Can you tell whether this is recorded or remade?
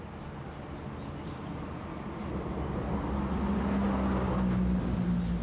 recorded